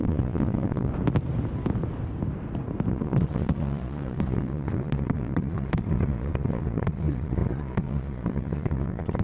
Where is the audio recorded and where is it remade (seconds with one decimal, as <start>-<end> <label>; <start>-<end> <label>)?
0.0-0.9 remade; 0.9-2.9 recorded; 2.9-9.2 remade